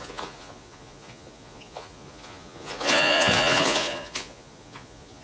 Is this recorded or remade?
remade